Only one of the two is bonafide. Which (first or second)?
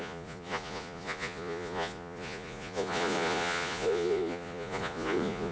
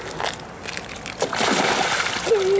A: second